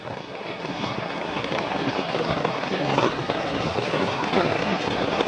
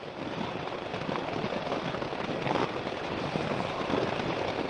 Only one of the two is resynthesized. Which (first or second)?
first